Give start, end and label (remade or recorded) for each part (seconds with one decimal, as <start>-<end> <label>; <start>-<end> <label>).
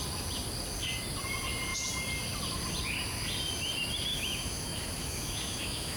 0.0-4.1 recorded; 4.1-6.0 remade